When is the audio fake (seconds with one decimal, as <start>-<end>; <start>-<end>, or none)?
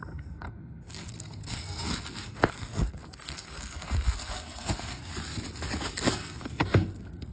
0.0-5.1; 5.9-7.3